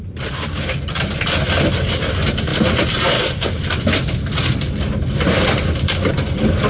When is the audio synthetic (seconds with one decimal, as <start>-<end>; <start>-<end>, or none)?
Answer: none